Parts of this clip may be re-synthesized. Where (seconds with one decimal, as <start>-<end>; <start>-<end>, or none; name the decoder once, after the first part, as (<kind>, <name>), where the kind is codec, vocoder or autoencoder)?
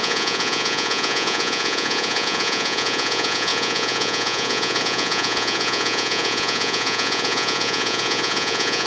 0.0-8.9 (vocoder, Vocos)